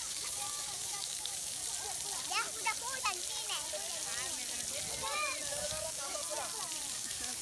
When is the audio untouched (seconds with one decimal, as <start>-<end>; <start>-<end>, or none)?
1.6-5.5; 6.2-6.9